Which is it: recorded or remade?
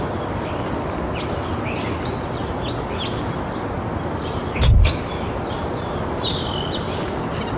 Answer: recorded